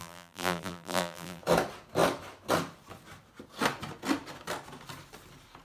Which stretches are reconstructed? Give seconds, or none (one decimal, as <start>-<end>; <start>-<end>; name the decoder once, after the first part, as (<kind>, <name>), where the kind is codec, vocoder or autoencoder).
0.0-1.4 (vocoder, BigVGAN v2)